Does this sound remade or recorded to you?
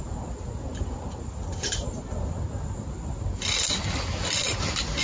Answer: recorded